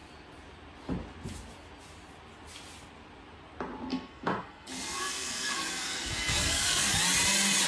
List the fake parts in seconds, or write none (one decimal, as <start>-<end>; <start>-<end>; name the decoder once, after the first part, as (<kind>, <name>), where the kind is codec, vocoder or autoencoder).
3.9-6.9 (codec, SNAC)